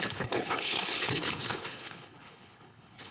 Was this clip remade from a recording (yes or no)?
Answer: yes